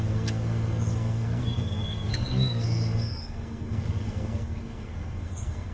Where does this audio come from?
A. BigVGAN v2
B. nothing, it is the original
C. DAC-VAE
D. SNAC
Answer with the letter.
D